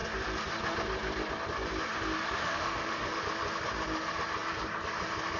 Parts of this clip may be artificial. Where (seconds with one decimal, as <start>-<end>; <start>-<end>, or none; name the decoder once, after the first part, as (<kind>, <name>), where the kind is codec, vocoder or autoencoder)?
2.4-3.2 (autoencoder, DAC-VAE)